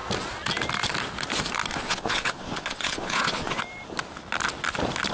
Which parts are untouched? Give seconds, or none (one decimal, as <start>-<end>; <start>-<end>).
0.0-1.7; 3.6-5.1

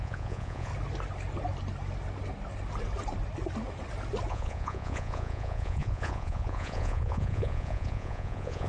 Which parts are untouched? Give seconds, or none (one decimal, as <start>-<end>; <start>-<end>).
0.7-4.3

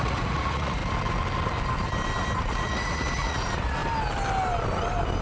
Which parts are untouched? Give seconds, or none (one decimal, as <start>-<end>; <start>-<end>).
0.8-2.4; 3.8-5.2

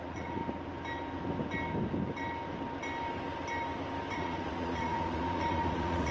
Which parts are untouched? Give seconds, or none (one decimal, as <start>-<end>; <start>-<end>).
0.4-4.1

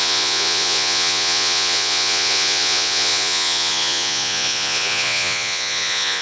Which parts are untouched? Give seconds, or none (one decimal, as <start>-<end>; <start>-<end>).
none

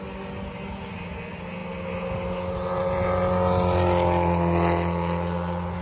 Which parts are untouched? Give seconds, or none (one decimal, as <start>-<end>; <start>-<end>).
0.0-5.8